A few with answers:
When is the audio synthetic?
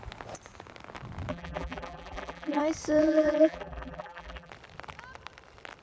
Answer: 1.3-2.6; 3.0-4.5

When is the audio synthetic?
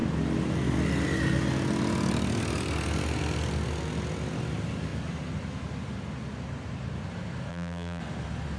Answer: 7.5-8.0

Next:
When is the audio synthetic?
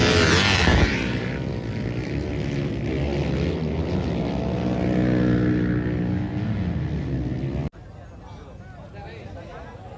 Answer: 0.7-1.3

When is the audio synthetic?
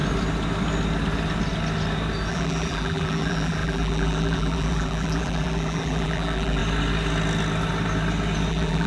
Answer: 2.3-6.6; 8.5-8.9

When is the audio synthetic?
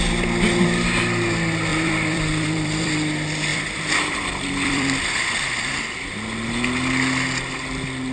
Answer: 1.7-2.9; 3.5-5.8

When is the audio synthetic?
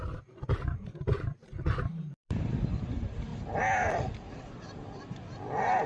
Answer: 0.0-3.3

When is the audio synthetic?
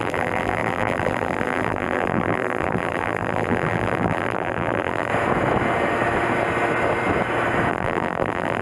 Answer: 0.0-5.1; 7.7-8.6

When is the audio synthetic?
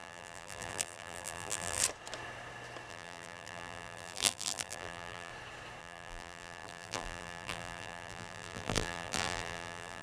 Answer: 0.0-1.8; 2.9-5.3; 5.8-10.0